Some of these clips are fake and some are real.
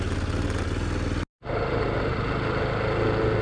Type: real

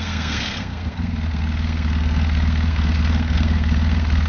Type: fake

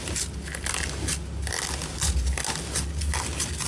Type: real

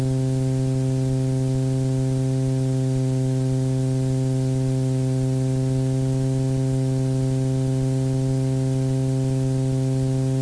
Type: real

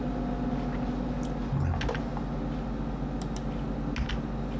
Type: real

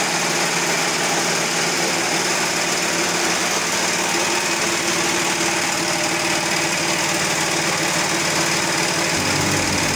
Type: real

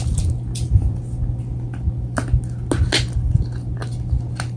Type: real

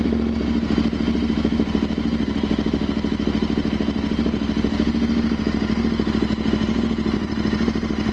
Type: real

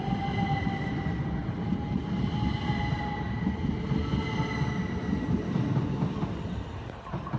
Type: real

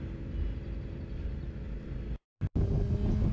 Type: real